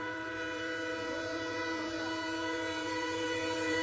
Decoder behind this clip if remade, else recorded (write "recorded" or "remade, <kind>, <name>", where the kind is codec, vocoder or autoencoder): remade, vocoder, Vocos